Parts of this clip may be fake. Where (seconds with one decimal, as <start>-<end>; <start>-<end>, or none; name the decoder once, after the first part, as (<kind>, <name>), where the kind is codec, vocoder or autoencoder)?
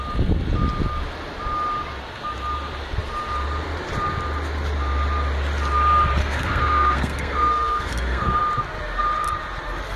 6.2-8.4 (codec, SNAC)